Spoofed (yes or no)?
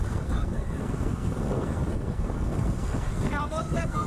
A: yes